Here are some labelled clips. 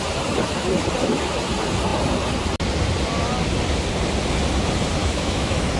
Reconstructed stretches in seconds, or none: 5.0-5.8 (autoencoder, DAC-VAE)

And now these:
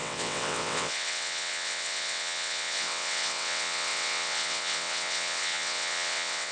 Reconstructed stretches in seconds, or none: 0.0-6.5 (vocoder, WaveNeXt)

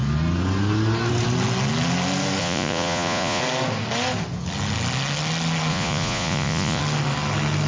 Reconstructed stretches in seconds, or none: 2.4-3.4 (vocoder, Vocos); 5.7-6.8